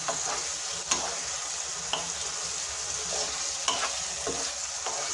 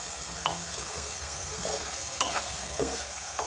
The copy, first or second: second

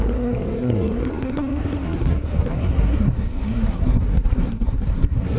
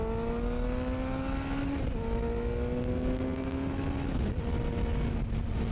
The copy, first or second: first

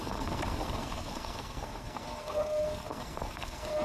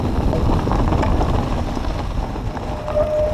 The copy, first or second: first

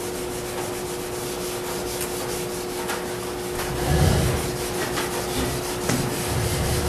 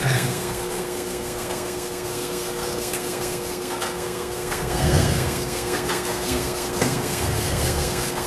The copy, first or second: second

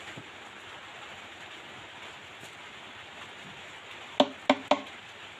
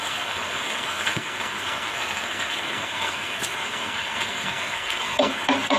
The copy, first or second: second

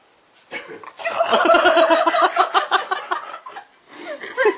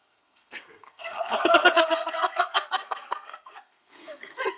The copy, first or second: second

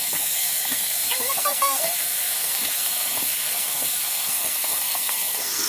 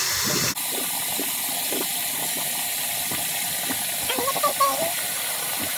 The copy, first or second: first